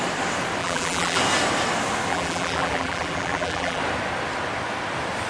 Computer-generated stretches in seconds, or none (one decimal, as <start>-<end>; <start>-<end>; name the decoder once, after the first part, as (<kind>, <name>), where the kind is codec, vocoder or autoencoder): 0.6-1.2 (vocoder, BigVGAN v2); 2.1-3.8